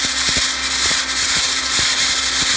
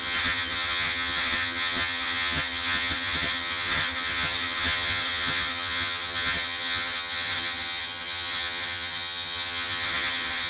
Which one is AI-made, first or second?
second